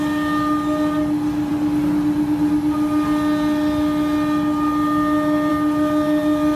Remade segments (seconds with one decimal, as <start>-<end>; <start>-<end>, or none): none